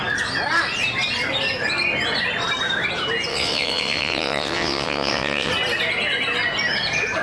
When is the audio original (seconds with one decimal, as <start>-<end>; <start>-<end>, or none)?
0.0-3.3; 5.5-7.2